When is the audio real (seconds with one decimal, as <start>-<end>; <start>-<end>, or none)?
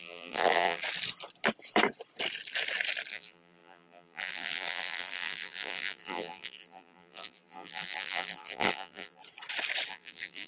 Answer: 0.8-3.1; 9.2-9.9